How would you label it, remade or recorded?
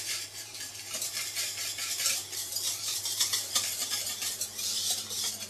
remade